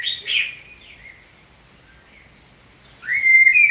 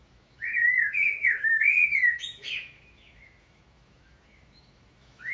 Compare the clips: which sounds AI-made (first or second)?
second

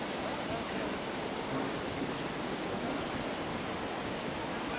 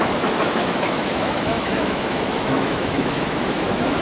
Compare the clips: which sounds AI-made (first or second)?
second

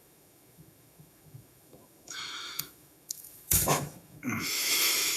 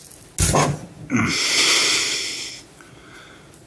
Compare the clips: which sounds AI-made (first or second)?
first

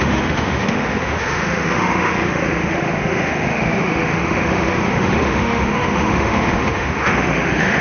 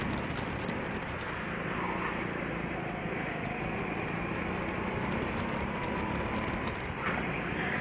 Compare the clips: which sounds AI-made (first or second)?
first